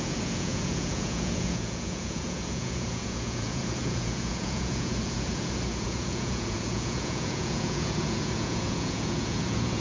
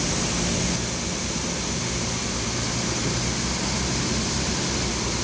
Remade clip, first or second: first